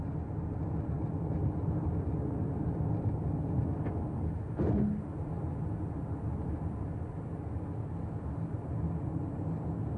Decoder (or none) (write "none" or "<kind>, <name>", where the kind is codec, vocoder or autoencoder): none